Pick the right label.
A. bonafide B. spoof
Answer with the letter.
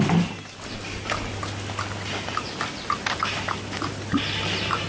A